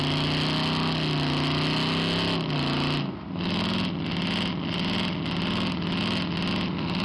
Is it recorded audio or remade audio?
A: recorded